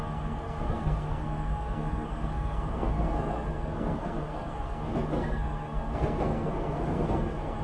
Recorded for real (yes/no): no